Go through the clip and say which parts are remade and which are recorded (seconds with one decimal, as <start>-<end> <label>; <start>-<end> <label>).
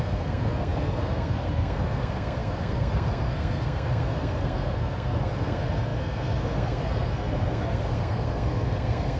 0.0-9.2 remade